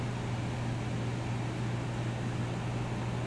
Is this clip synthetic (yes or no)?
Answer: no